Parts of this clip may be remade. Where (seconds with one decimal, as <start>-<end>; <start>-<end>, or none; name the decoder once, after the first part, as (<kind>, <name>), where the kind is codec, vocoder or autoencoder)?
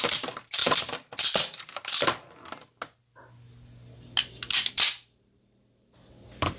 0.0-0.6 (vocoder, BigVGAN v2); 4.5-6.6